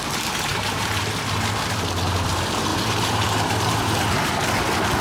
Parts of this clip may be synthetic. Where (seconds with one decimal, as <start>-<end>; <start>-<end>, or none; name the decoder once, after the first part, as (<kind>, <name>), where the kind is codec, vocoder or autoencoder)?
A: 0.5-1.0 (vocoder, BigVGAN v2); 2.7-4.3